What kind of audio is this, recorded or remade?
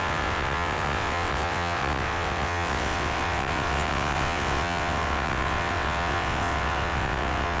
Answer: remade